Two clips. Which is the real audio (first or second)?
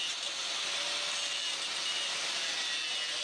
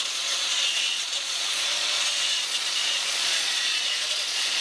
first